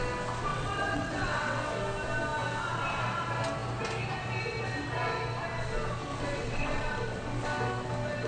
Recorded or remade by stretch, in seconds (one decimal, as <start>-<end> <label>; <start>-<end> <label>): 0.0-0.5 recorded; 0.5-1.6 remade; 1.6-6.1 recorded; 6.1-6.8 remade; 6.8-8.3 recorded